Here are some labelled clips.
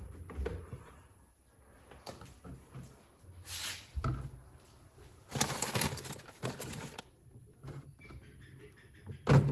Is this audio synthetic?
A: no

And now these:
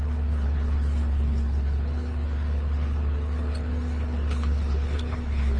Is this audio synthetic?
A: yes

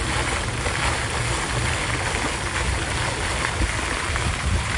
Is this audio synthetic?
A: no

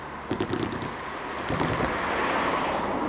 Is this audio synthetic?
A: no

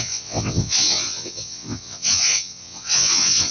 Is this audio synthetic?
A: yes